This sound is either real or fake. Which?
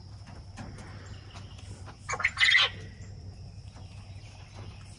real